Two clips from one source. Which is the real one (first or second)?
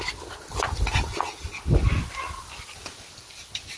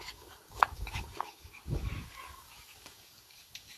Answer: first